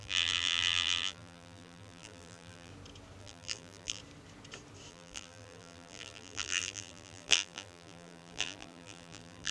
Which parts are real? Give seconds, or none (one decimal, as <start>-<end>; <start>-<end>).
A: 2.7-3.2; 4.0-4.9